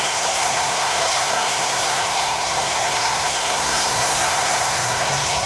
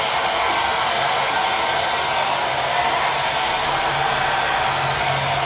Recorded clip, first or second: second